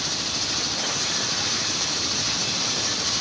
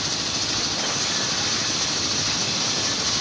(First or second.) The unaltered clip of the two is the second